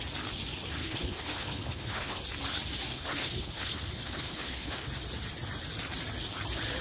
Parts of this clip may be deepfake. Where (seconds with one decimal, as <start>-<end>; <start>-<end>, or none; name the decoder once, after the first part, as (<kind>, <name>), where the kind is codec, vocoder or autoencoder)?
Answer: 0.8-2.2 (codec, HILCodec); 2.9-4.9